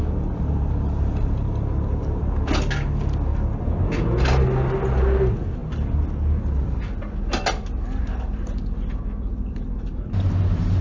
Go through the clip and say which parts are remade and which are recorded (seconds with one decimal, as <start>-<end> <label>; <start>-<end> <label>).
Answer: 0.0-10.8 recorded